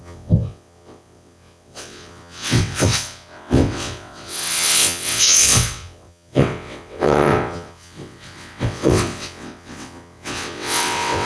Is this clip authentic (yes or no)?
no